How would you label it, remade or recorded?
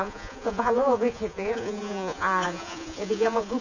remade